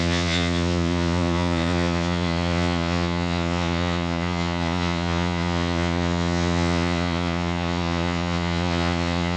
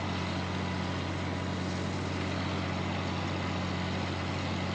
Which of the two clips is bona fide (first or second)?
second